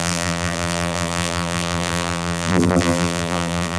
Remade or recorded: remade